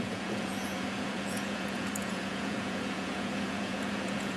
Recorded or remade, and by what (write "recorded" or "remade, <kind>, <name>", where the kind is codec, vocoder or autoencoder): remade, vocoder, Vocos